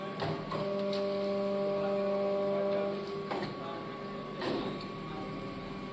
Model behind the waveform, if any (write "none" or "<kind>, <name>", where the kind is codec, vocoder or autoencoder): none